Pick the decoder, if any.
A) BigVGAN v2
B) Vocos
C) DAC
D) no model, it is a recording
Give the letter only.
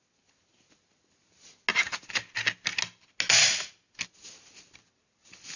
D